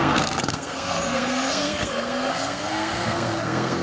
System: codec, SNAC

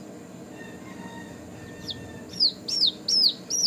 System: none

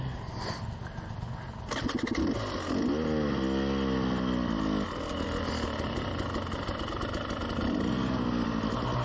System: none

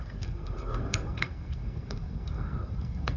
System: codec, SNAC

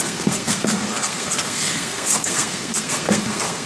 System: codec, SNAC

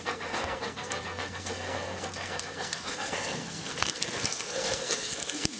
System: codec, SNAC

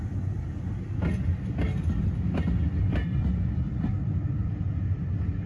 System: none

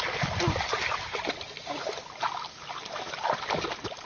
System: none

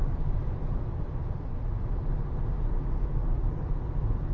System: none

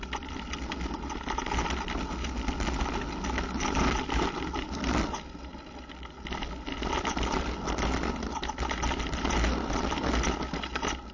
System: none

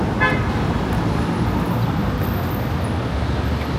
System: none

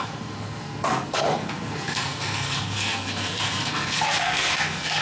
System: codec, SNAC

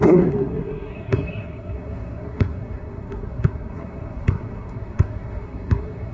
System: codec, SNAC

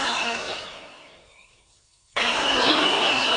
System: codec, SNAC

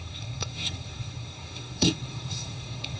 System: codec, SNAC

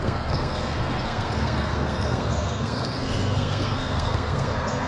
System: codec, SNAC